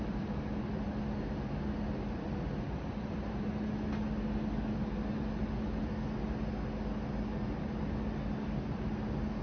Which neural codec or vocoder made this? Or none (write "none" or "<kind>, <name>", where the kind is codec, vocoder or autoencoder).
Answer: none